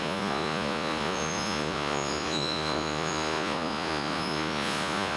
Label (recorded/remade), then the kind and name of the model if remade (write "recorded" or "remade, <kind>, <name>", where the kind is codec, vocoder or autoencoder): remade, vocoder, Vocos